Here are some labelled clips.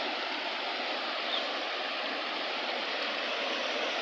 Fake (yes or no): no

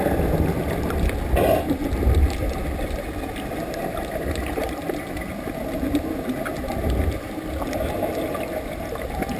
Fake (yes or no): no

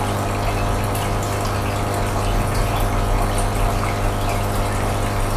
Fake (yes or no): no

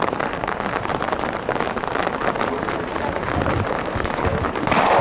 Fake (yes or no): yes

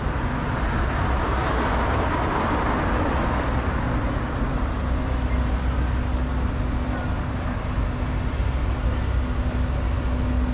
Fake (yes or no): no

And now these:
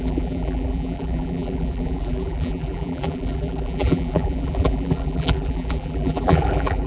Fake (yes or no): yes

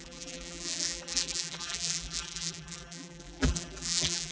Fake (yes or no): yes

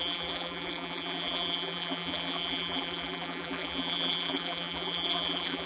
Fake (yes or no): yes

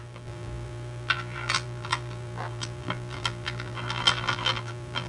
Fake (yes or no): yes